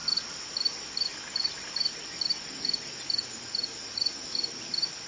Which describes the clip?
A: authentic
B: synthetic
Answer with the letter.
A